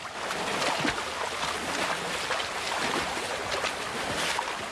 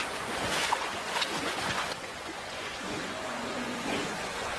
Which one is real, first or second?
first